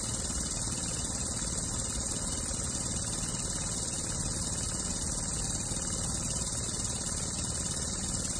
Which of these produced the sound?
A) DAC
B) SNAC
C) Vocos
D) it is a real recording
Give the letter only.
D